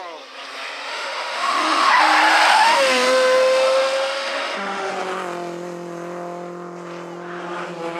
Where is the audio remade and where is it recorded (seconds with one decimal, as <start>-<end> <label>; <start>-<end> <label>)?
0.0-0.9 recorded; 0.9-2.0 remade; 2.0-2.5 recorded; 2.5-4.9 remade; 4.9-8.0 recorded